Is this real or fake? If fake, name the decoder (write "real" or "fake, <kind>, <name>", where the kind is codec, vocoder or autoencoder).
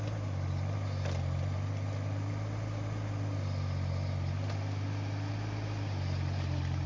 real